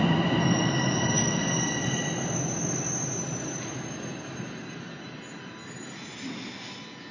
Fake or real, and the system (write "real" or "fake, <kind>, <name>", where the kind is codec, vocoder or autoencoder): real